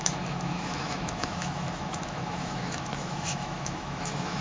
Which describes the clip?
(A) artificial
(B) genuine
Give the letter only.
A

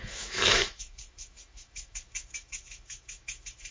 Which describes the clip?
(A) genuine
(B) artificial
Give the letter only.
B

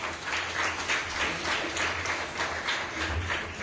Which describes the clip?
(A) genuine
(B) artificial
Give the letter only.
A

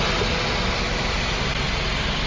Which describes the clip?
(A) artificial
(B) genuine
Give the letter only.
B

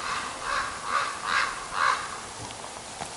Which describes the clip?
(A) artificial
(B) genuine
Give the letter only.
B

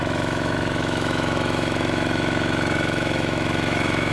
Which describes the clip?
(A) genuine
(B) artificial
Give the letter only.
B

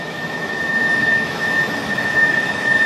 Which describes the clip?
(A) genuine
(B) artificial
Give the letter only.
B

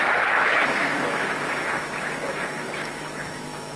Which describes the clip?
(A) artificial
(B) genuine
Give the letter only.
A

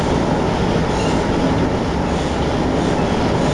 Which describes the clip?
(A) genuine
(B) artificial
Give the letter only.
A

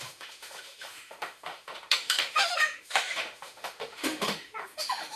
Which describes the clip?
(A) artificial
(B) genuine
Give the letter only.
A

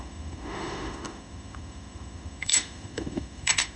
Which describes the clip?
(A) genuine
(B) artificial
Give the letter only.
B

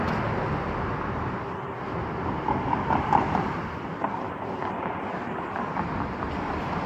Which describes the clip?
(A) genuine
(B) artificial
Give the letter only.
A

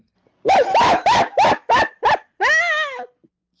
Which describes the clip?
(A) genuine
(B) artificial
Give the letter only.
A